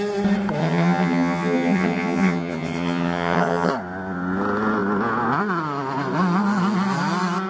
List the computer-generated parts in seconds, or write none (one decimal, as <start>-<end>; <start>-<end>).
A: 0.6-3.7